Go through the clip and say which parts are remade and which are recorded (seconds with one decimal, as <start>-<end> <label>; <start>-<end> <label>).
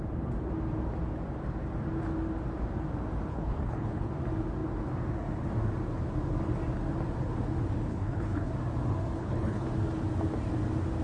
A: 0.0-3.3 recorded; 3.3-4.1 remade; 4.1-7.9 recorded; 7.9-8.5 remade; 8.5-9.2 recorded; 9.2-9.7 remade; 9.7-11.0 recorded